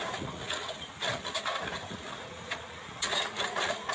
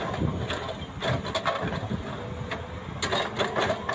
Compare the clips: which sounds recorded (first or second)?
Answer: second